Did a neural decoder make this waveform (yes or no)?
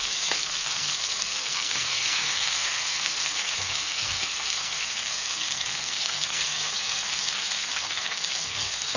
yes